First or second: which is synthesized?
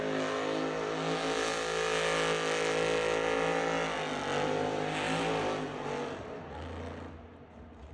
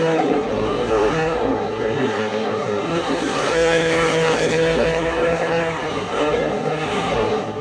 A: second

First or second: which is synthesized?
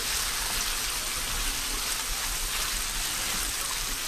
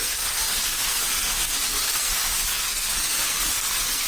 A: second